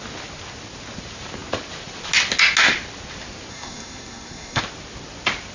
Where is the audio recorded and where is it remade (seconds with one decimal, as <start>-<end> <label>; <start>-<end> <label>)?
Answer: 0.0-3.5 recorded; 3.5-4.6 remade; 4.6-5.5 recorded